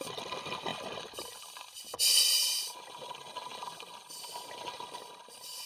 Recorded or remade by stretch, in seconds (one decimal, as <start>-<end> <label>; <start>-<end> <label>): 0.0-5.7 recorded